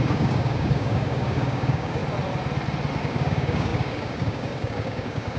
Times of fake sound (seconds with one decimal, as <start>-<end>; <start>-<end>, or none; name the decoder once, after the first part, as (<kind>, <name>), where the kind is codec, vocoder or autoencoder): 0.0-2.0 (codec, DAC); 3.0-5.4